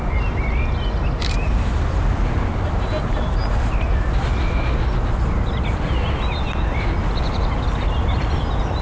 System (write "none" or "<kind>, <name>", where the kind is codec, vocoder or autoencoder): none